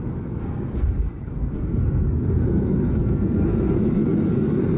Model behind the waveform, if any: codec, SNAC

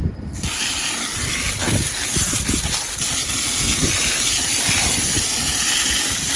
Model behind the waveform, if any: none